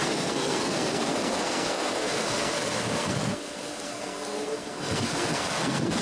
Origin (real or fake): fake